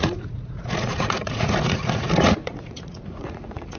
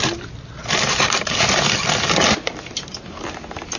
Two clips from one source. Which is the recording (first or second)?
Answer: second